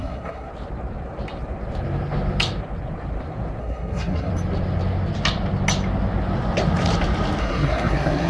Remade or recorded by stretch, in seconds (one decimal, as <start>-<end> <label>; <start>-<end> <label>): 0.0-0.5 remade; 0.5-3.6 recorded; 3.6-4.3 remade; 4.3-7.4 recorded; 7.4-8.3 remade